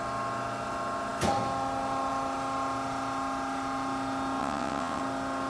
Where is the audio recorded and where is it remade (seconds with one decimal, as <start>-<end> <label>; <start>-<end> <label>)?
0.0-4.4 recorded; 4.4-5.0 remade; 5.0-5.5 recorded